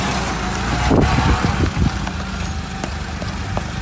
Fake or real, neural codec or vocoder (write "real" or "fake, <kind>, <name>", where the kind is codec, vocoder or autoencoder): real